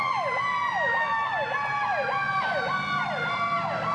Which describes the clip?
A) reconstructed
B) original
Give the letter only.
B